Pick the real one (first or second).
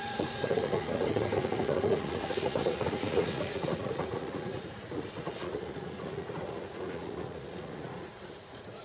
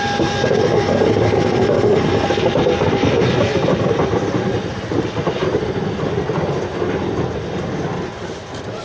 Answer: second